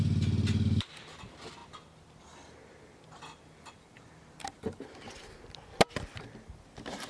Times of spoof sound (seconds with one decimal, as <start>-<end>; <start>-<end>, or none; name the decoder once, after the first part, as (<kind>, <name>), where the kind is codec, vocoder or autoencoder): none